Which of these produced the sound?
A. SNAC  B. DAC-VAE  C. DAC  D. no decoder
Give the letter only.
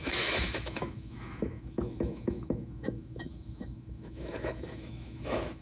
B